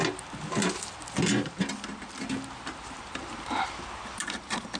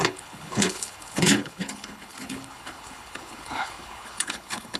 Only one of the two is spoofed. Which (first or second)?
second